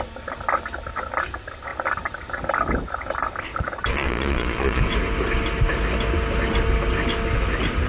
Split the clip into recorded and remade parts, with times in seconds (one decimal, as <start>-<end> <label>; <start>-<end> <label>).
0.0-3.9 recorded; 3.9-4.8 remade; 4.8-7.9 recorded